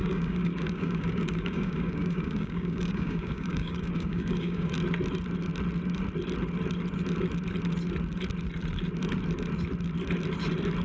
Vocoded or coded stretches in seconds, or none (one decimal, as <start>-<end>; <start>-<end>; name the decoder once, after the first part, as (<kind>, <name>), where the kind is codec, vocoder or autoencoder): 0.0-4.7 (codec, DAC)